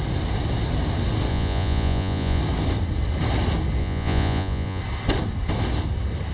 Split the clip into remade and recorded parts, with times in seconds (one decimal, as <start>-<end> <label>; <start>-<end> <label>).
0.0-1.3 recorded; 1.3-2.4 remade; 2.4-3.8 recorded; 3.8-4.8 remade; 4.8-6.3 recorded